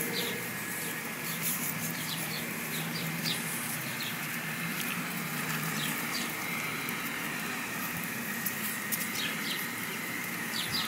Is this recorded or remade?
remade